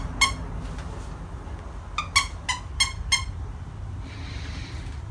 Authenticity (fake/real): real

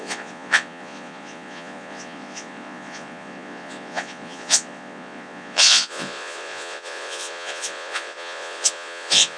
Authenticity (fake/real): fake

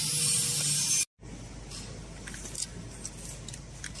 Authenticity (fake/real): real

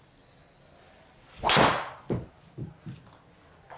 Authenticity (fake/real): real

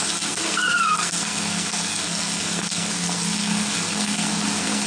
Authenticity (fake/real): fake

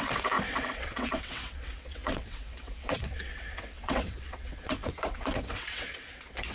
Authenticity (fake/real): fake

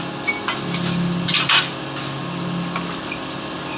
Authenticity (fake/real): real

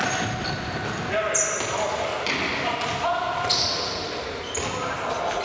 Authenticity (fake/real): real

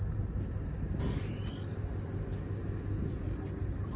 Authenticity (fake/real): real